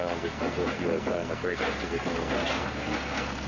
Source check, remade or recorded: remade